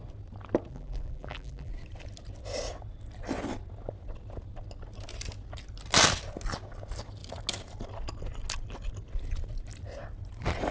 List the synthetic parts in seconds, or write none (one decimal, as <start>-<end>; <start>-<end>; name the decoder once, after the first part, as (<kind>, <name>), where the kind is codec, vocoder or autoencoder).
0.7-1.7 (vocoder, BigVGAN v2)